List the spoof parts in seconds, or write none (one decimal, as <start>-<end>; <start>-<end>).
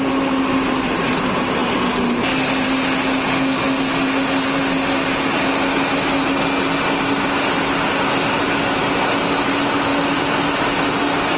none